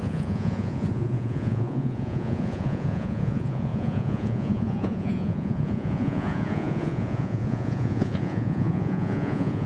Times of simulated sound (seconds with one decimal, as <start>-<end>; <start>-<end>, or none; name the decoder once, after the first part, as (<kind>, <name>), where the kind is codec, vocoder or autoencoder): 0.0-9.7 (vocoder, Vocos)